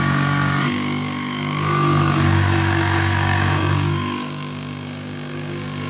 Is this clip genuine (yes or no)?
no